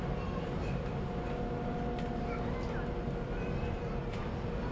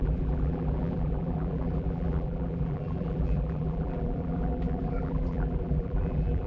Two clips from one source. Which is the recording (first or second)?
first